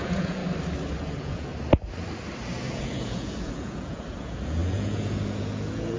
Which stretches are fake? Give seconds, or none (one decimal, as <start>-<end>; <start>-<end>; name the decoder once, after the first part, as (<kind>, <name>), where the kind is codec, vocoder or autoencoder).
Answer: 0.0-0.4 (vocoder, Vocos); 1.0-1.5; 2.7-6.0